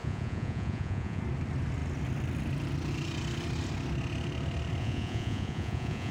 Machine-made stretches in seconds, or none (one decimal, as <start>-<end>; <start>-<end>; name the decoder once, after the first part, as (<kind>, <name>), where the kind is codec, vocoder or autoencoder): 0.0-1.2 (vocoder, Vocos); 4.8-6.1